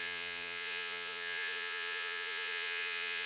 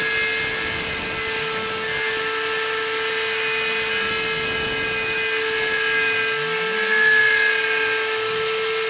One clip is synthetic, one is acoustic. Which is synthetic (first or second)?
first